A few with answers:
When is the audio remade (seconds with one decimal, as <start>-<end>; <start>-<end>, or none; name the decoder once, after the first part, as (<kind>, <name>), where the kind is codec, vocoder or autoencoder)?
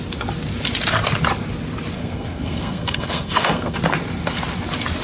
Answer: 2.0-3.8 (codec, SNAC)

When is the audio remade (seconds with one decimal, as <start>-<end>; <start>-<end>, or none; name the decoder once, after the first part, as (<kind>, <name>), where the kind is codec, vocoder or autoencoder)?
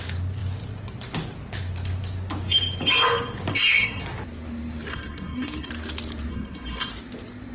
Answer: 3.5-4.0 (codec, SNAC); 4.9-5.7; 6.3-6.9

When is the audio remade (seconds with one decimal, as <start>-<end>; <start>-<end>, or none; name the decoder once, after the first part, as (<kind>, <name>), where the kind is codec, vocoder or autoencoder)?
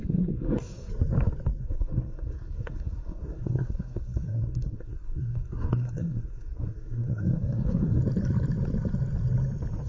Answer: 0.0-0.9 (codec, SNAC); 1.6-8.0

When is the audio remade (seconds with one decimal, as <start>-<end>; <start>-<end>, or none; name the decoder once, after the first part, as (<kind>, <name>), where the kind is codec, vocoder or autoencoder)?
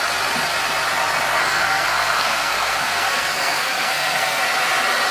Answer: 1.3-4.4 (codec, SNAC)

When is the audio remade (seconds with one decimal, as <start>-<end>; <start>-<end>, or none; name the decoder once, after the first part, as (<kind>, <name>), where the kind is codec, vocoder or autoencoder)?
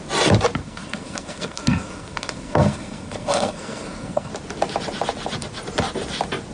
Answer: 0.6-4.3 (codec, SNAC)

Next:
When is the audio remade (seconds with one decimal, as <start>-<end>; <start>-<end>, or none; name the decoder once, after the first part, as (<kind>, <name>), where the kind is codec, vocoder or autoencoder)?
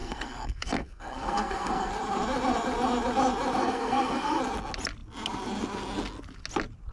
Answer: 0.0-1.9 (codec, SNAC); 3.6-4.4